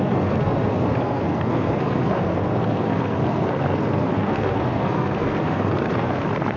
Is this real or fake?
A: fake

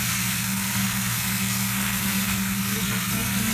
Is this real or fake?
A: fake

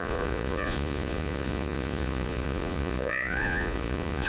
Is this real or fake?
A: fake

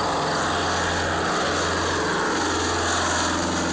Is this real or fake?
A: real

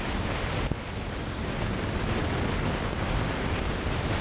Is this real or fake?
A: real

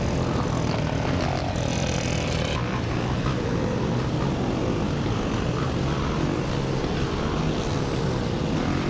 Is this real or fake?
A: real